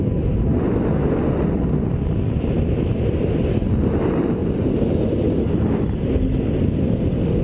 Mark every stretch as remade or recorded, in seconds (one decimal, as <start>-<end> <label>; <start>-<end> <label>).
0.0-7.4 recorded